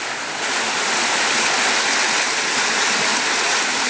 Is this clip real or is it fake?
real